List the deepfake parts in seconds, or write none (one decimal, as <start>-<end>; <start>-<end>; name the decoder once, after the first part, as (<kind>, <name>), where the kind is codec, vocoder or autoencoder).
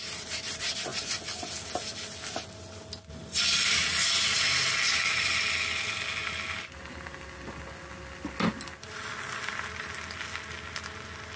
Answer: none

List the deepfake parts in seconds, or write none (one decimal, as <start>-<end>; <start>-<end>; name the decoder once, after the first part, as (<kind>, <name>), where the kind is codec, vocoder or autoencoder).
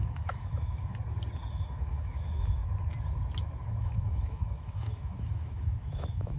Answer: 0.0-0.8 (autoencoder, DAC-VAE); 1.5-2.6; 3.6-6.4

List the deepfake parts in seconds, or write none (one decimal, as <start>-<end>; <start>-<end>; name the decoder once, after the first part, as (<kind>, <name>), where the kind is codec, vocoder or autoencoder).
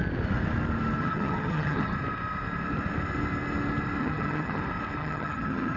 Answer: 1.0-1.9 (vocoder, HiFi-GAN); 4.0-4.6; 5.0-5.8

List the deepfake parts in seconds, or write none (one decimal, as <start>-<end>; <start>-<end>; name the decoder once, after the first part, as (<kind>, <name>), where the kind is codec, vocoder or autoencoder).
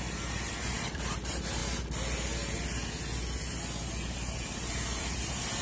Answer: 0.0-1.6 (vocoder, BigVGAN v2); 5.0-5.6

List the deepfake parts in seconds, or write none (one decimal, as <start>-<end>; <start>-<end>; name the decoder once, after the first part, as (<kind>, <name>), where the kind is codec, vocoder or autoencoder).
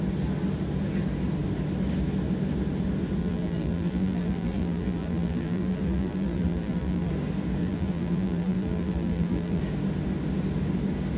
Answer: 3.2-7.1 (vocoder, BigVGAN v2); 7.6-9.6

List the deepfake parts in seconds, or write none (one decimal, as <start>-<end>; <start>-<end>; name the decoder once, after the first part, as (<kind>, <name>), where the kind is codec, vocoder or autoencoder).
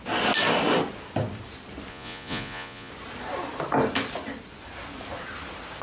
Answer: 1.9-2.9 (vocoder, Vocos)